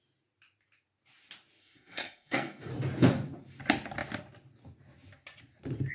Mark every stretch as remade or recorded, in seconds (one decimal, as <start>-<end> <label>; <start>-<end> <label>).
0.0-1.6 recorded; 1.6-2.7 remade; 2.7-5.9 recorded